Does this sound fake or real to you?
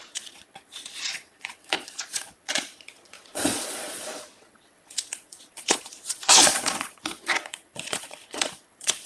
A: fake